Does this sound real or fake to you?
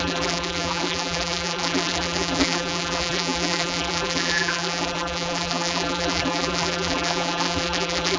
fake